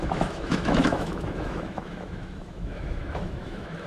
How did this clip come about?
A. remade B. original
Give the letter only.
A